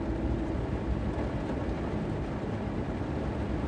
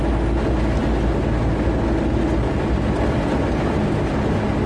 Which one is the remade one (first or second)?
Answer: first